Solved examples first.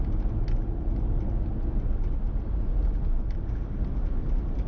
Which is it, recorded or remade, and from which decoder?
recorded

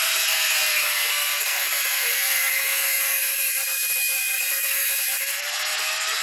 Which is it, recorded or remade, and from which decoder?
remade, codec, SNAC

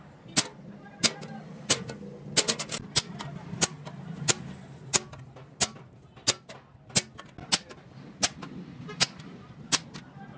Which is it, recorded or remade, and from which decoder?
recorded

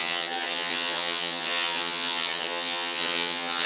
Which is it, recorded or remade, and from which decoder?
remade, vocoder, HiFi-GAN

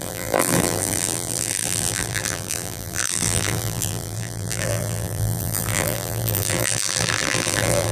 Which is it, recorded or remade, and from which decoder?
remade, vocoder, BigVGAN v2